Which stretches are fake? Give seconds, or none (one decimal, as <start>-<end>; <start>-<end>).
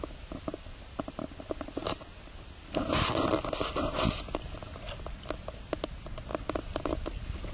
none